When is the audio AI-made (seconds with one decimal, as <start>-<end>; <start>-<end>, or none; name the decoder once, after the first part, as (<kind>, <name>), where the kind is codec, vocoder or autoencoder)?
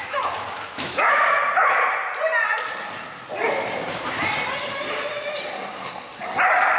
0.0-1.4 (autoencoder, DAC-VAE)